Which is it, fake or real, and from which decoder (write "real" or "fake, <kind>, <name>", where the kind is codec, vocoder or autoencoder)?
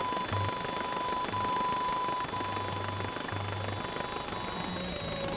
real